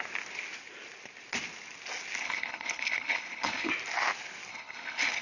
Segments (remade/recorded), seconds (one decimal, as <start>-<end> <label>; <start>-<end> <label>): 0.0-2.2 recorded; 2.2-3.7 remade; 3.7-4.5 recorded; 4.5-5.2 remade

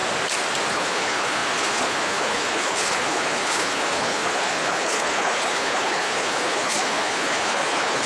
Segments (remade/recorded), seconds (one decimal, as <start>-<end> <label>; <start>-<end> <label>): 0.0-0.7 recorded; 0.7-8.1 remade

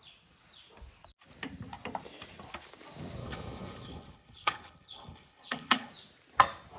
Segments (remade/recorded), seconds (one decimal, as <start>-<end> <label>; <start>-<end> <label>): 0.0-3.2 recorded; 3.2-5.9 remade; 5.9-6.8 recorded

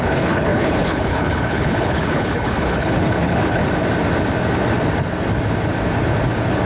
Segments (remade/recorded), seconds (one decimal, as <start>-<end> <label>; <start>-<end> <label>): 0.0-3.6 remade; 3.6-6.7 recorded

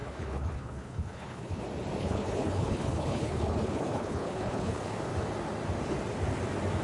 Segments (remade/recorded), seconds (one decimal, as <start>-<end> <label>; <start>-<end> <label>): 0.0-1.6 remade; 1.6-2.0 recorded; 2.0-5.0 remade; 5.0-6.8 recorded

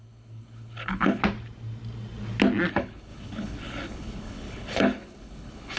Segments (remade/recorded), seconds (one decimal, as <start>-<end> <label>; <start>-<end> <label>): 0.0-1.2 remade; 1.2-2.7 recorded; 2.7-5.8 remade

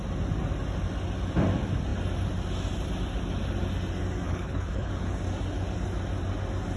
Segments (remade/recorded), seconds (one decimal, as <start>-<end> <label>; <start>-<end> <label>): 0.0-4.3 recorded; 4.3-4.9 remade; 4.9-6.8 recorded

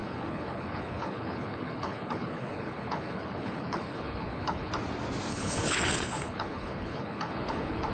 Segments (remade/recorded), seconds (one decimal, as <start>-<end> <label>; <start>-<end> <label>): 0.0-4.7 remade; 4.7-5.3 recorded; 5.3-7.9 remade